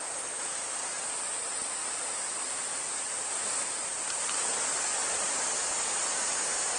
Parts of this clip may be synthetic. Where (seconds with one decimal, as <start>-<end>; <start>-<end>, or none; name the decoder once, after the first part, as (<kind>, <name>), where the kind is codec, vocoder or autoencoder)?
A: 1.8-5.9 (vocoder, BigVGAN v2)